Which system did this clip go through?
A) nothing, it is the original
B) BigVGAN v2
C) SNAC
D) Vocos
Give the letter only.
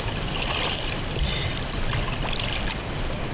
A